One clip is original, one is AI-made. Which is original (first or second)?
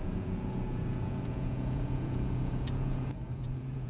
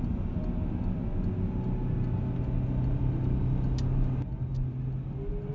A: second